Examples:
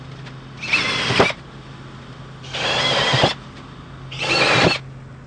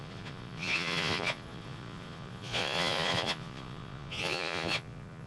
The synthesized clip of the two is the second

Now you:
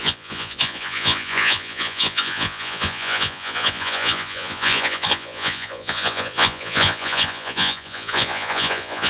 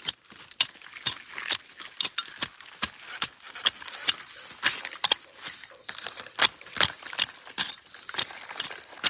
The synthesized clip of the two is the first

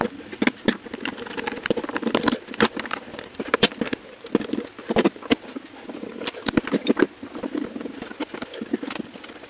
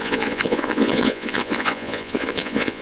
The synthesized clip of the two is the second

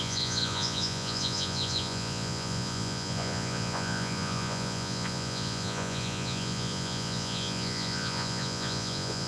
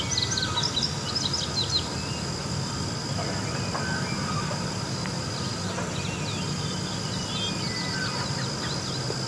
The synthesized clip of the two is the first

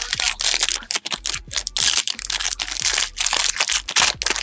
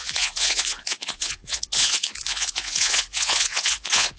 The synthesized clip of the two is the second